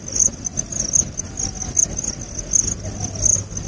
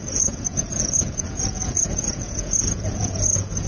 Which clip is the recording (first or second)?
first